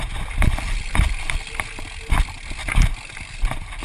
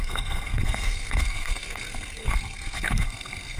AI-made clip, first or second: second